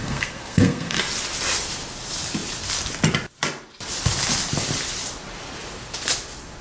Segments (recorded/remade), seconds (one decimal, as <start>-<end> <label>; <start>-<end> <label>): 0.0-1.0 remade; 1.0-6.6 recorded